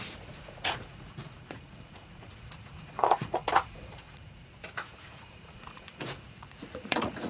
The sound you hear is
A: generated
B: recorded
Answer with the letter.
A